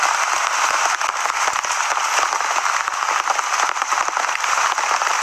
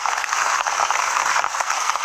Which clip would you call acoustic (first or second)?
first